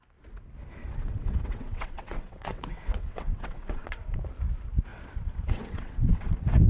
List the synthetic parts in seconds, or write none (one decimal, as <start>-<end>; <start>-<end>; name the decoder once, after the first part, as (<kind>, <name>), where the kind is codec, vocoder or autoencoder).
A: 0.8-4.2 (vocoder, WaveNeXt); 4.9-6.3